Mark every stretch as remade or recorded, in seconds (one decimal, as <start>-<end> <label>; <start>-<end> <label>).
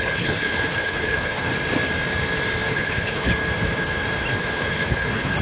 0.0-1.5 remade; 1.5-2.7 recorded; 2.7-3.3 remade; 3.3-4.4 recorded; 4.4-5.4 remade